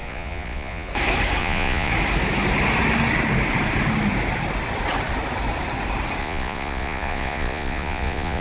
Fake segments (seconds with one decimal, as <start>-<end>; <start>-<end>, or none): 0.0-0.9; 1.4-1.9; 6.2-8.4